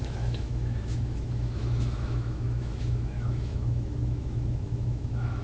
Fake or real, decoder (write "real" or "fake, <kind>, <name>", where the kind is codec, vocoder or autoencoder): fake, autoencoder, DAC-VAE